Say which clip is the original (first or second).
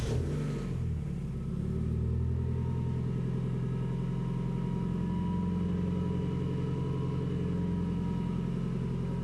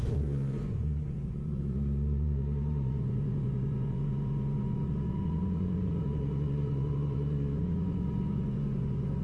first